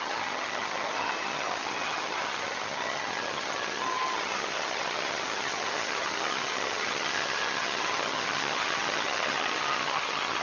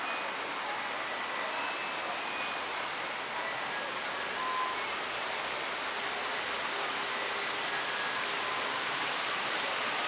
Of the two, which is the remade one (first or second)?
first